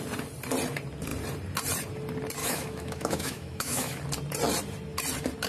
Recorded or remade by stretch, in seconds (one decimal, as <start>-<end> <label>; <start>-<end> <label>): 0.0-2.4 recorded; 2.4-4.0 remade; 4.0-5.5 recorded